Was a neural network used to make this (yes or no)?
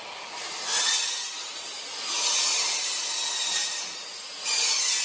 no